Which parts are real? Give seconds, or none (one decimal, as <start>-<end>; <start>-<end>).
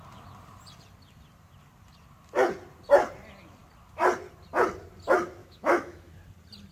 0.0-5.4; 6.1-6.7